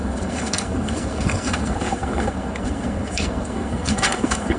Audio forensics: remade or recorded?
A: remade